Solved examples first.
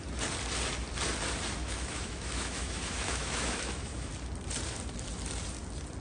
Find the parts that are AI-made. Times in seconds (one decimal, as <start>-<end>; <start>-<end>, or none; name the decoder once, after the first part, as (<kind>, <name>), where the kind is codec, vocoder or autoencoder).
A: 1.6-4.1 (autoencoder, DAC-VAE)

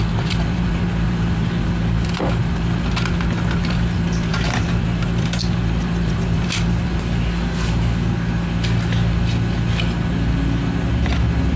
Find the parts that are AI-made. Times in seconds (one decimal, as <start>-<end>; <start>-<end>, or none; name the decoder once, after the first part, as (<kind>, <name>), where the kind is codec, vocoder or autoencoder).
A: none

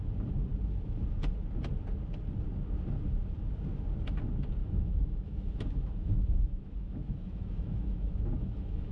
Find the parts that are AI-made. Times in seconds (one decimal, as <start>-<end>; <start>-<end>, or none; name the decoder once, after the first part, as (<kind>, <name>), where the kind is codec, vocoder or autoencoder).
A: 4.6-8.9 (autoencoder, DAC-VAE)

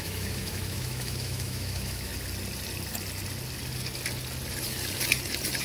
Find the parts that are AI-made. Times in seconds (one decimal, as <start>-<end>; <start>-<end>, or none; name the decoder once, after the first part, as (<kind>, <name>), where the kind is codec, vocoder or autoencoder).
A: 0.0-2.1 (autoencoder, DAC-VAE)